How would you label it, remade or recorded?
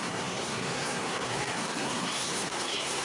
remade